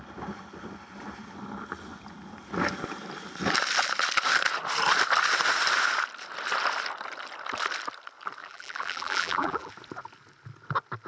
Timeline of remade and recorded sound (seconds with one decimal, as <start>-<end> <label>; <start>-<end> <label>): 0.0-8.4 recorded; 8.4-9.7 remade; 9.7-11.1 recorded